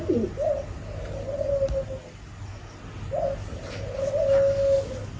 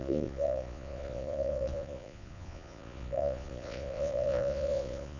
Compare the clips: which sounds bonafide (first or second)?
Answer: first